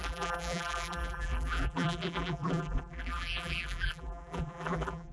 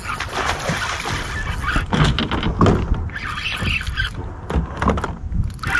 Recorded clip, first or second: second